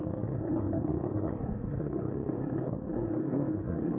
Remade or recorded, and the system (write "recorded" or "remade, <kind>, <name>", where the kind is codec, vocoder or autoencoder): remade, codec, SNAC